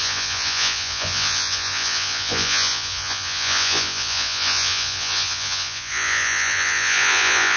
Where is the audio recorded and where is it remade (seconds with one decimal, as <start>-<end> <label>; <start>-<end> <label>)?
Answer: 0.0-7.6 remade